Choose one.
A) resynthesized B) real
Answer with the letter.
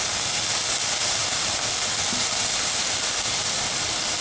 B